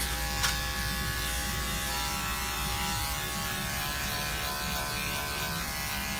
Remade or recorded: recorded